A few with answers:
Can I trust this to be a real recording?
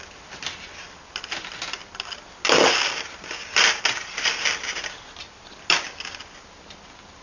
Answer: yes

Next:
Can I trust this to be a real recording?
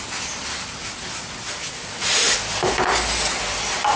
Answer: yes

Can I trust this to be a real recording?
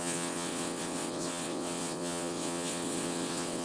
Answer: no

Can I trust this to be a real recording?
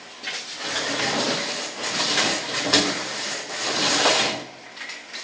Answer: yes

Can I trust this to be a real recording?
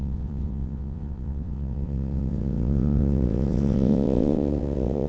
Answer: no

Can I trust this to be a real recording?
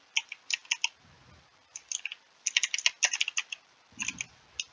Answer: yes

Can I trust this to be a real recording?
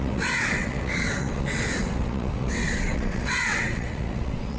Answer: no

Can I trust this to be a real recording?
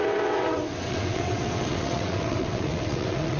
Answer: no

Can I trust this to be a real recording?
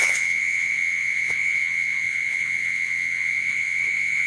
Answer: no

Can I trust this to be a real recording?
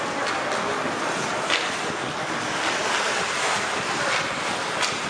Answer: yes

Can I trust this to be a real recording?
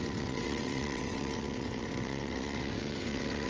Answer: no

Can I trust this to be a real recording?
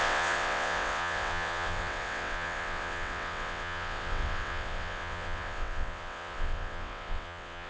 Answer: no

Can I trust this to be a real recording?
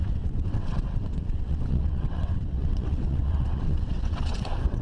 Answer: no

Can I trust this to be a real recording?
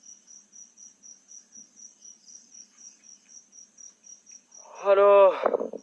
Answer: yes